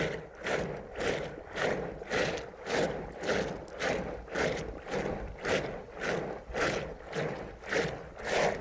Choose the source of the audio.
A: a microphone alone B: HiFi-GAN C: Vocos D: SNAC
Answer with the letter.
A